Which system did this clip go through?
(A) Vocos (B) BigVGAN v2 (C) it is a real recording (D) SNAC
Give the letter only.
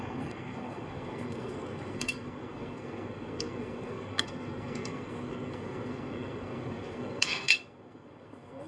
D